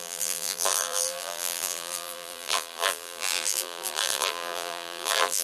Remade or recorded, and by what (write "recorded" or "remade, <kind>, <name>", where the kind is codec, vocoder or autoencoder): remade, vocoder, BigVGAN v2